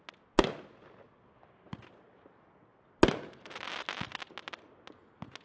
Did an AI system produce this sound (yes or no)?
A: no